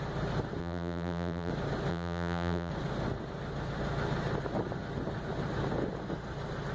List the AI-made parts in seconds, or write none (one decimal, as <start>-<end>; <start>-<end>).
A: 0.6-1.5; 1.9-2.7